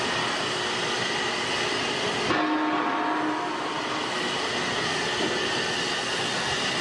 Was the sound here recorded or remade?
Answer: recorded